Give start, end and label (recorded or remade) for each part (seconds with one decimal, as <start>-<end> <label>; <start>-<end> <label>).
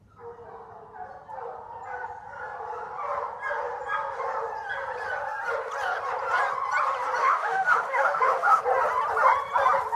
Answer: 0.0-7.2 recorded; 7.2-8.6 remade; 8.6-10.0 recorded